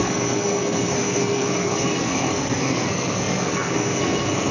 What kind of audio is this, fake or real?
fake